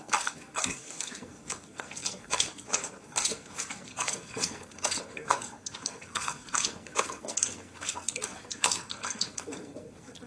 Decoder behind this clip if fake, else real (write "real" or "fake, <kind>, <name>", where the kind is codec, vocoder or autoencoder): fake, codec, SNAC